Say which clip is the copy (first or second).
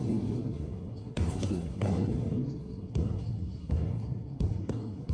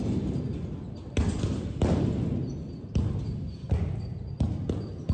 first